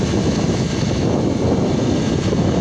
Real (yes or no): yes